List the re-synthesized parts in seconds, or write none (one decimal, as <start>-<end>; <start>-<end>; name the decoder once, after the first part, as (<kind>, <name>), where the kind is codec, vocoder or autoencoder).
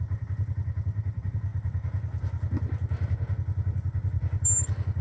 none